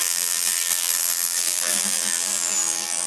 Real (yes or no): no